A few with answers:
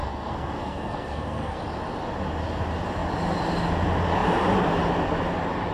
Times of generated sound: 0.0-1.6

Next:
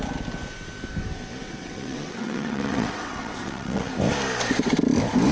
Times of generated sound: 1.4-3.9

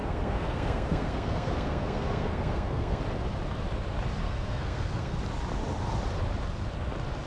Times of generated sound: 0.0-3.0; 4.2-5.2